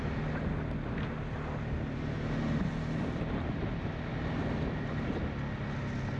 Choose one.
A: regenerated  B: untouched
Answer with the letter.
B